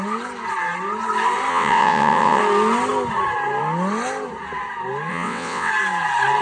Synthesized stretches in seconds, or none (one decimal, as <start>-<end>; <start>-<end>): 1.5-2.4; 5.1-5.7